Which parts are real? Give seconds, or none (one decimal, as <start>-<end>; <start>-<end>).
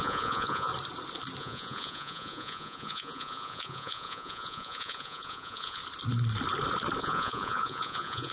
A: 0.7-1.4; 5.8-7.0